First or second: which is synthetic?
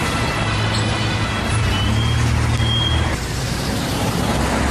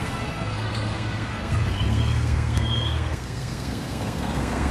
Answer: second